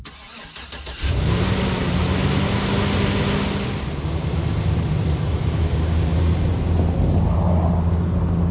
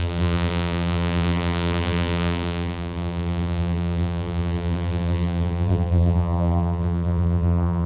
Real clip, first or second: first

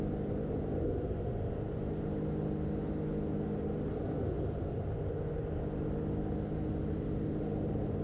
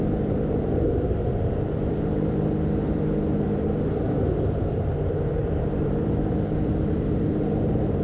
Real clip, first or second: first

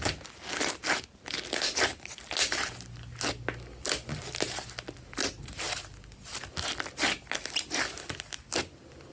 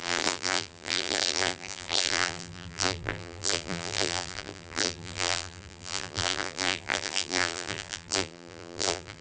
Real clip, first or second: first